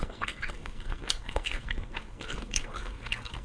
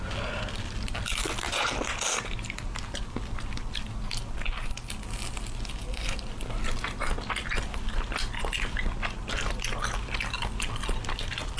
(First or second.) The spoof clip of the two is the first